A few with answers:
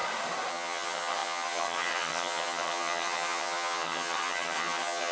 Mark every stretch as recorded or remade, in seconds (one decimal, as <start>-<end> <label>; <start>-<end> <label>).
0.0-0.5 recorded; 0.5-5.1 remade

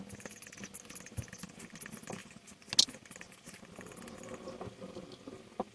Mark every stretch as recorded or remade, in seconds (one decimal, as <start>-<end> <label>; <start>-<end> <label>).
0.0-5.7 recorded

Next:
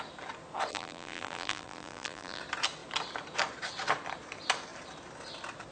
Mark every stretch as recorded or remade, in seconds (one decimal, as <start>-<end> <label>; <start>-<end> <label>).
0.0-0.7 recorded; 0.7-2.4 remade; 2.4-5.7 recorded